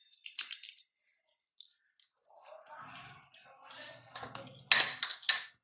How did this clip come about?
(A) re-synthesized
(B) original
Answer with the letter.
B